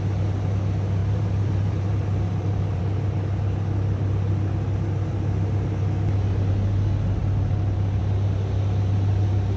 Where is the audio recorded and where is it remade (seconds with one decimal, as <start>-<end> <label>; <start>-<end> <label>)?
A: 0.0-1.0 recorded; 1.0-2.8 remade; 2.8-9.6 recorded